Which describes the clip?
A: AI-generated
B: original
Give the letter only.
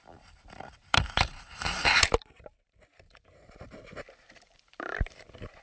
A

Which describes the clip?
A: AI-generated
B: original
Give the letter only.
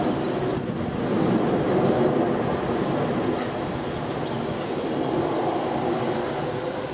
B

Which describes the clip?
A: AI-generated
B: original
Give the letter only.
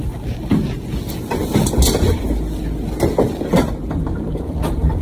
B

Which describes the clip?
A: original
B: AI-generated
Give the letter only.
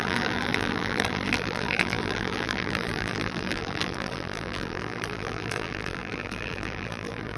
B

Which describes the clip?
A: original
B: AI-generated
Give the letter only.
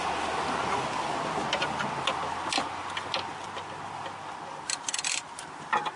A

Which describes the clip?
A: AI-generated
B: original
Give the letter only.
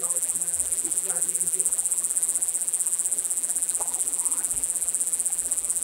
A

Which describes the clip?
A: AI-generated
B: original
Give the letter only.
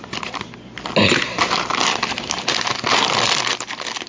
B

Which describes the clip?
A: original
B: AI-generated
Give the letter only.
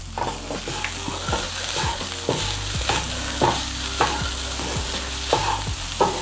A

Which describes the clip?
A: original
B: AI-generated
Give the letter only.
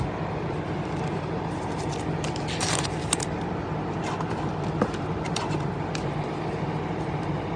B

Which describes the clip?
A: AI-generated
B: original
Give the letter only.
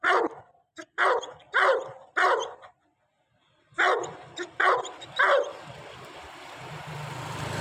A